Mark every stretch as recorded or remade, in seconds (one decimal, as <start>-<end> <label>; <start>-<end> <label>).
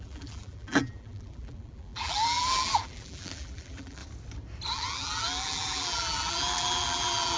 0.0-4.0 remade; 4.0-4.7 recorded; 4.7-7.4 remade